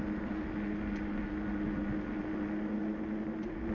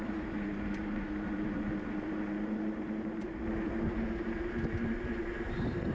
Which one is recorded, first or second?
first